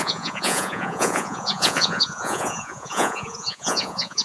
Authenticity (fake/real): fake